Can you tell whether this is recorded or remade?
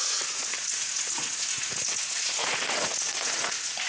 remade